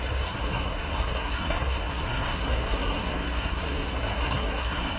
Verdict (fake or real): fake